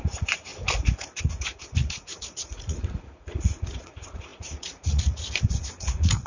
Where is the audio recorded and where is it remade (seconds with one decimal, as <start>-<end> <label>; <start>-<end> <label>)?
0.0-0.5 remade; 0.5-1.2 recorded; 1.2-6.3 remade